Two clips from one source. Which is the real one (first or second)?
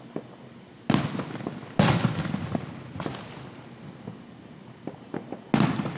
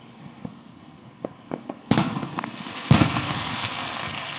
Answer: first